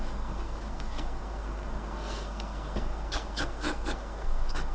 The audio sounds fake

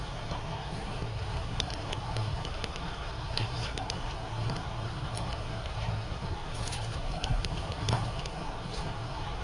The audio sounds fake